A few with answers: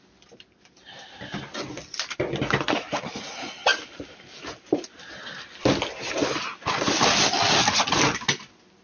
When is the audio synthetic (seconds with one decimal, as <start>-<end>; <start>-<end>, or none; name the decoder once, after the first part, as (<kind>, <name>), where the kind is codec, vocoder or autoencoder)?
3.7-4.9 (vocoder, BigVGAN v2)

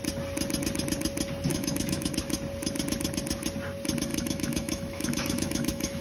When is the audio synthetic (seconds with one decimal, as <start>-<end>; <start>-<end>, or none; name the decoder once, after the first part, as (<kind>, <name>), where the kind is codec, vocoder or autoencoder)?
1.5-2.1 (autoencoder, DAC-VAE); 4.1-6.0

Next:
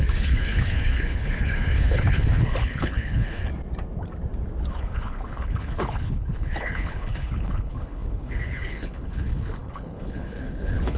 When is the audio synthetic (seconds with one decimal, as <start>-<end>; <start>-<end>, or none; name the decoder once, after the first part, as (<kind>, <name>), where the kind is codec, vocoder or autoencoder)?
0.0-3.4 (codec, HILCodec); 4.7-11.0

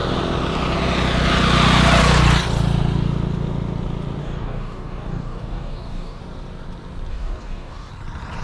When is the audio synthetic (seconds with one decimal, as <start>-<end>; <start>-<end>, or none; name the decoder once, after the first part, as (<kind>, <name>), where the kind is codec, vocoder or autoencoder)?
4.2-6.2 (codec, DAC); 7.1-7.9

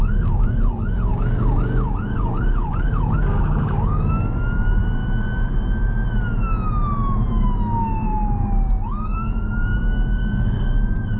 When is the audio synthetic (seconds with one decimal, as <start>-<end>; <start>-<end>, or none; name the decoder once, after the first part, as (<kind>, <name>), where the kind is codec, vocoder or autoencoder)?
0.0-4.8 (codec, DAC); 7.3-11.2

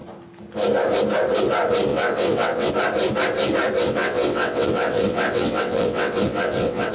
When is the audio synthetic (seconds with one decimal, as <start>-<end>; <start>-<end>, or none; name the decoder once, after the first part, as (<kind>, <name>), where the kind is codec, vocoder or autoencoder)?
1.9-2.7 (vocoder, WaveNeXt); 3.8-6.9

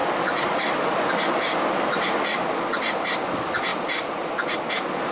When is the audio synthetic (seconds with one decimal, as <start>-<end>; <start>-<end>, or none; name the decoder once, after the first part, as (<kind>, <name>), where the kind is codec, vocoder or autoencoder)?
none

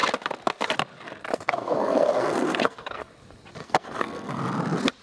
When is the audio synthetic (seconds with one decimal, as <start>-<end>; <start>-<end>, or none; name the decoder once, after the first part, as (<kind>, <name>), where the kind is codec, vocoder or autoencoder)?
1.3-3.1 (codec, SNAC); 3.6-4.4